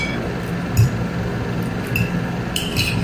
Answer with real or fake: real